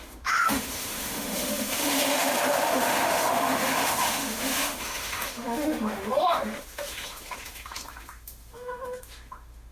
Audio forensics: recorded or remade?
remade